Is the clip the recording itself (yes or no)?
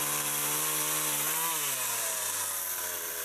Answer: yes